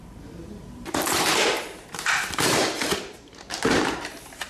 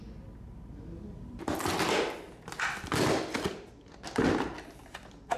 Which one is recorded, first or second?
second